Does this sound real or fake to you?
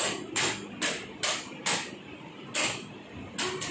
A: real